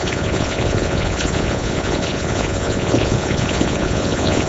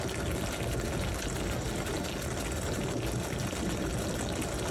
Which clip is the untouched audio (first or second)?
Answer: second